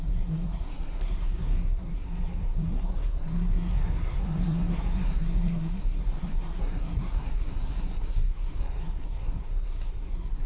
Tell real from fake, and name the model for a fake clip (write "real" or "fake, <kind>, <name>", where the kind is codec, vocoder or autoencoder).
fake, codec, SNAC